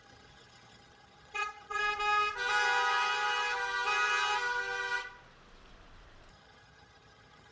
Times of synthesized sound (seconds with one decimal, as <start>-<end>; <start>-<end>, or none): 0.0-1.8; 6.3-7.5